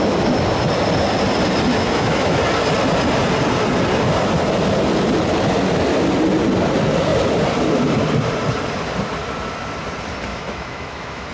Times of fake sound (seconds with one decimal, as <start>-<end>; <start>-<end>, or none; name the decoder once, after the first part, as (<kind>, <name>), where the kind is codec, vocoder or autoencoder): 1.7-2.4 (autoencoder, DAC-VAE); 10.3-11.3